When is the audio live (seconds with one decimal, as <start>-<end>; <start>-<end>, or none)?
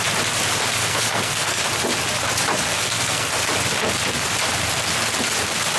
0.0-0.8; 1.6-2.7; 3.3-5.8